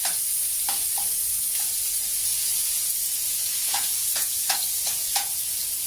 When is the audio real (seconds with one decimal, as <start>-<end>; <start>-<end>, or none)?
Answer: 0.0-2.3